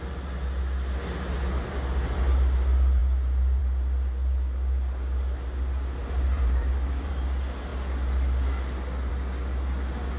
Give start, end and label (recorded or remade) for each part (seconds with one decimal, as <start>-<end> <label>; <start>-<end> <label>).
0.0-6.0 recorded; 6.0-7.1 remade; 7.1-10.2 recorded